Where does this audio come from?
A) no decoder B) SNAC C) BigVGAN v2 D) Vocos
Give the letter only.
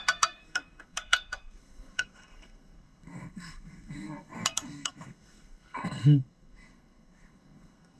B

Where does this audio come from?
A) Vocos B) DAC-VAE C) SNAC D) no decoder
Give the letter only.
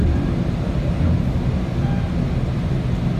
D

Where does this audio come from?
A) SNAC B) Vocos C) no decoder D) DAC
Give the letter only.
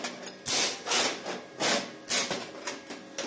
C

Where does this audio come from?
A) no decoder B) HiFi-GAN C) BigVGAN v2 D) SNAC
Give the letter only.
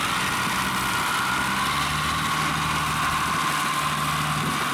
A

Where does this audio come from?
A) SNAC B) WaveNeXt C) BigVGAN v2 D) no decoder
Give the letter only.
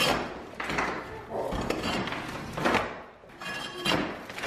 D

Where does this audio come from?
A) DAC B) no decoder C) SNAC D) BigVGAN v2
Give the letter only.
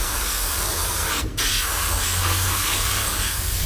C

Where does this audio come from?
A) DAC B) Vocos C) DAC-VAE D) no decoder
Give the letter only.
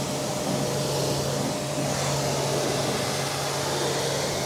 D